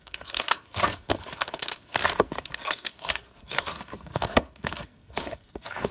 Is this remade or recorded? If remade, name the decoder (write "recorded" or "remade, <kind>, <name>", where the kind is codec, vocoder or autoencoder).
remade, codec, SNAC